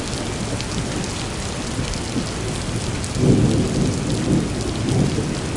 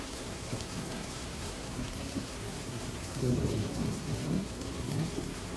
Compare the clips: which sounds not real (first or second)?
second